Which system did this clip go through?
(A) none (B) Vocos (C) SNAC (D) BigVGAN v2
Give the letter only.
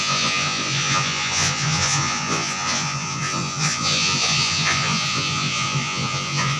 B